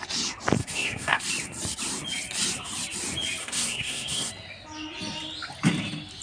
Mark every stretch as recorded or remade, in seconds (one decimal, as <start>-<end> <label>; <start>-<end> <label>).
0.0-0.6 recorded; 0.6-1.2 remade; 1.2-3.4 recorded; 3.4-4.3 remade; 4.3-6.2 recorded